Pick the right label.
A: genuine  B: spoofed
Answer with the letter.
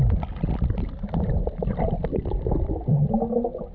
A